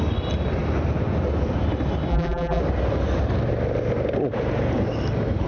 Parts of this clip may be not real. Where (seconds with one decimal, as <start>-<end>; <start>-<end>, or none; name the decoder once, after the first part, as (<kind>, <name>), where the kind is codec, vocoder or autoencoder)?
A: 2.1-2.6 (vocoder, BigVGAN v2)